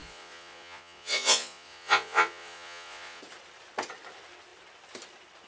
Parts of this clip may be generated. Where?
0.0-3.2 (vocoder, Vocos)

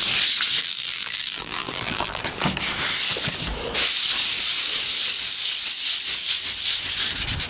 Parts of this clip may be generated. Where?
0.6-2.2 (vocoder, BigVGAN v2)

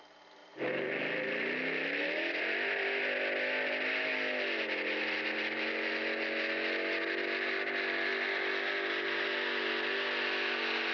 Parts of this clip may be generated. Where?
0.4-3.2 (vocoder, BigVGAN v2)

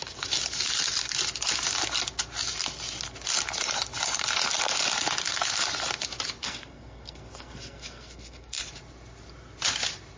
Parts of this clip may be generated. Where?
6.4-8.6 (codec, SNAC)

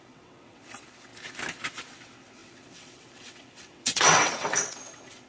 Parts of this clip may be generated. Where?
0.0-1.1 (vocoder, WaveNeXt); 1.9-5.3

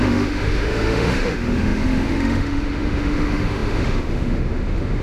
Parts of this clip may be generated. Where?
0.0-5.0 (autoencoder, DAC-VAE)

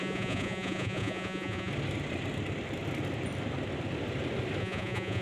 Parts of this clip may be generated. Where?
0.0-1.7 (vocoder, Vocos); 4.6-5.2

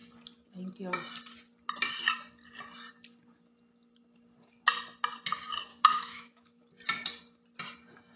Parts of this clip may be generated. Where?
5.7-6.6 (autoencoder, DAC-VAE)